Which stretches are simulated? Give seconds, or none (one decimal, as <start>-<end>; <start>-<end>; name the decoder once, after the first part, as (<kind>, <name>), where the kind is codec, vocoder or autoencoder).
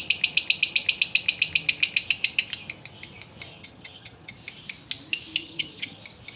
3.5-4.3 (vocoder, HiFi-GAN); 5.4-6.0